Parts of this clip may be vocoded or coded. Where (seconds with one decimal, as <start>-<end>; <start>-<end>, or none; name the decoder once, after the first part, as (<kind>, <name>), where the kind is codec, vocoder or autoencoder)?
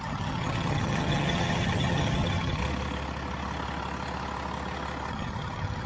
0.0-2.6 (vocoder, HiFi-GAN); 5.1-5.9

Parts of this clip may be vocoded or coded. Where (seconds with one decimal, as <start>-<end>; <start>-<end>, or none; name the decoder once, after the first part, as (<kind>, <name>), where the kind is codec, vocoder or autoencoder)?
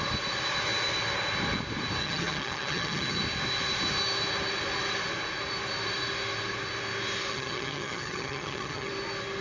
2.0-3.2 (vocoder, HiFi-GAN); 7.3-8.9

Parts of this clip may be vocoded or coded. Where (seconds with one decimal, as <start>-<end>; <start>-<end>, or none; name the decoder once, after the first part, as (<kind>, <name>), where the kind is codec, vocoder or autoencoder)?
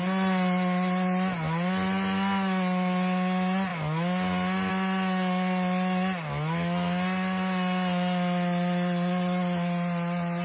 none